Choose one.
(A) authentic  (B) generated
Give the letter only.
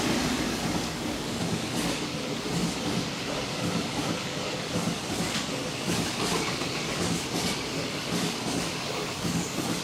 B